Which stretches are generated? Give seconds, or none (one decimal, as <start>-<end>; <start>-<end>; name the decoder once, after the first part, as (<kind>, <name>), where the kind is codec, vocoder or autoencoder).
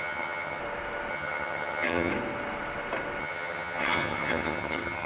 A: 0.0-0.6 (vocoder, HiFi-GAN); 1.1-2.1; 3.2-5.1